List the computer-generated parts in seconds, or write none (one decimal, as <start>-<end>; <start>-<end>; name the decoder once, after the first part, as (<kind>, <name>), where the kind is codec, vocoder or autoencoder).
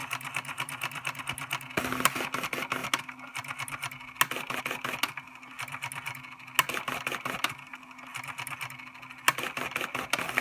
0.0-1.2 (vocoder, BigVGAN v2)